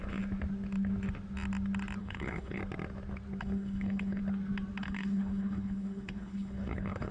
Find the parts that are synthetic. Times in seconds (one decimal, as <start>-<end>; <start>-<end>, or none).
2.0-2.6; 3.4-4.2; 4.8-7.1

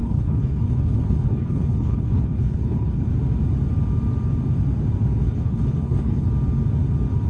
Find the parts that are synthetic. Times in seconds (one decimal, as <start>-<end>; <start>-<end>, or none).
0.0-3.1; 5.2-6.3

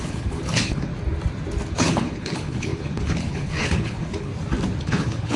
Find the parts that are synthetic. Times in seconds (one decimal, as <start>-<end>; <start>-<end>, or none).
0.0-0.9; 1.7-4.3; 4.8-5.4

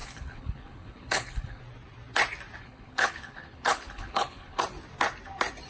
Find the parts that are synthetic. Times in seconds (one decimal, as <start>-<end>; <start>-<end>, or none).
0.0-1.6; 2.6-4.6

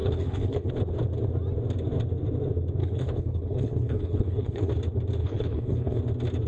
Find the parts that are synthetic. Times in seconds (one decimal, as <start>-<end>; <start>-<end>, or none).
0.0-0.7; 2.8-4.7; 5.2-6.0

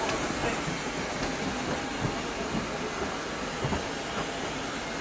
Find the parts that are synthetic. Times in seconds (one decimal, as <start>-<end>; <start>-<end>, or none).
none

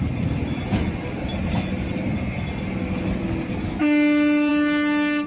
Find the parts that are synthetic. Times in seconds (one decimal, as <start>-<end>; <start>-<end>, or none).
none